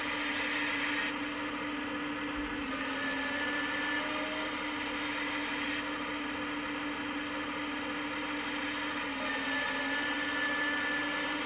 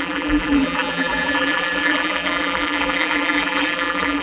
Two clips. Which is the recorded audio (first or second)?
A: first